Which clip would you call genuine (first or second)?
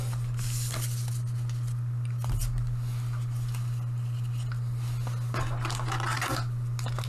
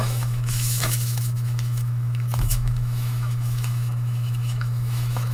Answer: first